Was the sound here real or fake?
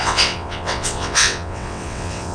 fake